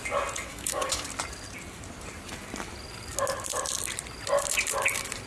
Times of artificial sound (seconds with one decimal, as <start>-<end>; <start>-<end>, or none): 0.5-1.0